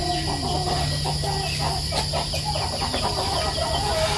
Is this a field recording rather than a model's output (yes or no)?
yes